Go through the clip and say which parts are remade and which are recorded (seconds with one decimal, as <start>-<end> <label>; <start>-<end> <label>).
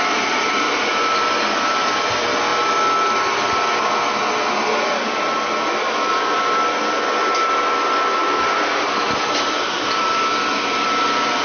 0.0-2.5 remade; 2.5-3.7 recorded; 3.7-4.2 remade; 4.2-6.1 recorded; 6.1-11.4 remade